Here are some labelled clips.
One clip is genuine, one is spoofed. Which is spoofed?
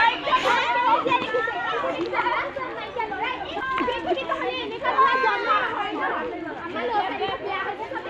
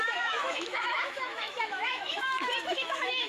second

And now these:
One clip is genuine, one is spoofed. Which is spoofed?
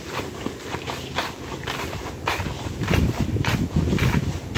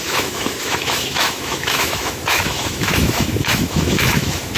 second